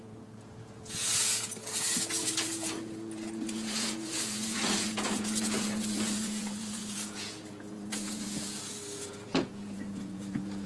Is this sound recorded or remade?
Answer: remade